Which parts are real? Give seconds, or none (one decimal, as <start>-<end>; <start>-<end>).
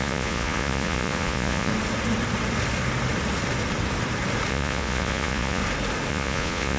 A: 1.7-4.5; 5.6-6.1